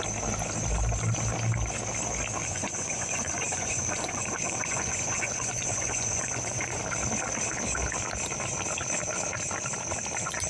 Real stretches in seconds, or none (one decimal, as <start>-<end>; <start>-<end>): 0.0-2.4; 6.8-10.5